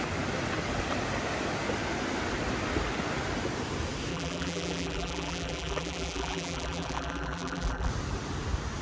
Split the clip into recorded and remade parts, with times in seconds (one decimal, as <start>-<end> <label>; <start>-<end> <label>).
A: 0.0-4.1 recorded; 4.1-7.9 remade; 7.9-8.8 recorded